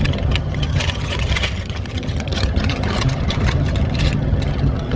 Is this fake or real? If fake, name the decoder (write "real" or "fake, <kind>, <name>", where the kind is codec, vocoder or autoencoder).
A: fake, vocoder, HiFi-GAN